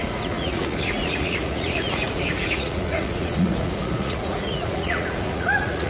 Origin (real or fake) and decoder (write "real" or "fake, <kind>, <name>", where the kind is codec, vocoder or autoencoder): fake, vocoder, Vocos